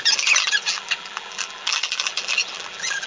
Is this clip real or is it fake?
fake